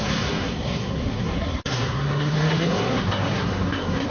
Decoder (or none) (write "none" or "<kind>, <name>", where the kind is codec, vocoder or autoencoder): codec, SNAC